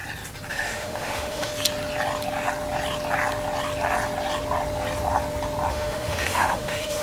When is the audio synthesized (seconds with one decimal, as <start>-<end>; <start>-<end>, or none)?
0.5-1.5; 5.7-7.0